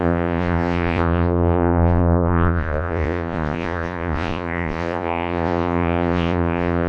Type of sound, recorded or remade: remade